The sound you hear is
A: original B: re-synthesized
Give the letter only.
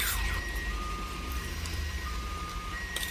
B